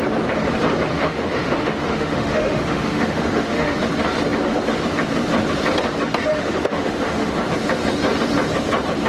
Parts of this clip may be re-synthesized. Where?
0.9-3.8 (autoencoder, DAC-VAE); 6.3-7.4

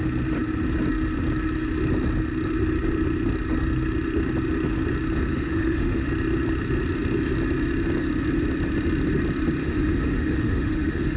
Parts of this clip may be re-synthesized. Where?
5.3-6.1 (autoencoder, DAC-VAE); 9.6-11.2

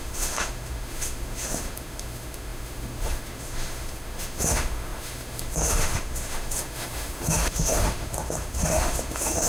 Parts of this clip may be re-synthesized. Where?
0.0-9.5 (autoencoder, DAC-VAE)